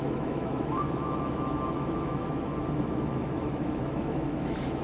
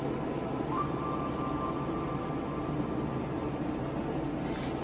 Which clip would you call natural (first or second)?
second